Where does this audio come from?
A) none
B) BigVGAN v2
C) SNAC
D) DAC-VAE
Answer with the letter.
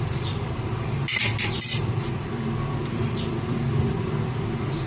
B